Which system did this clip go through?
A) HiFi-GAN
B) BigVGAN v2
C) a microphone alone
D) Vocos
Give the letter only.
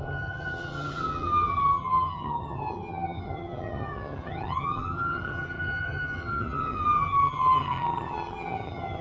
A